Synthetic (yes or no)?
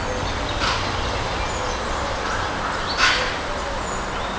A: no